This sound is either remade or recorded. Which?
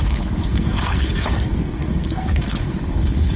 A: remade